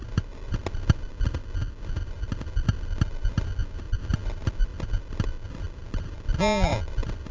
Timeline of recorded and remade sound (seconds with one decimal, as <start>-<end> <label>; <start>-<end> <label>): 0.0-7.3 recorded